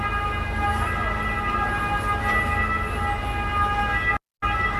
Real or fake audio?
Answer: real